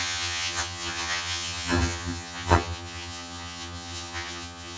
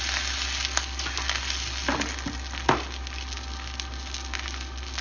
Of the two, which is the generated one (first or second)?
first